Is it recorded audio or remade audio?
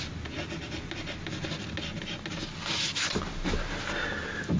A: recorded